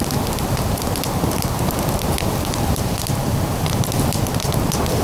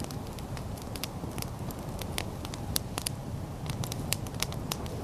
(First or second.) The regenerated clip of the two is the first